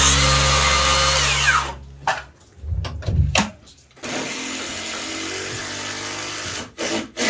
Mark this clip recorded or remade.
recorded